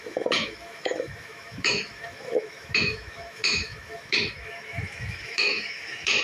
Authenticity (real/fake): fake